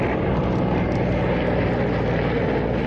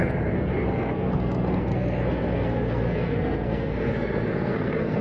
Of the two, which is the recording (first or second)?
first